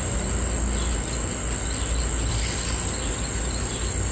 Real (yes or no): yes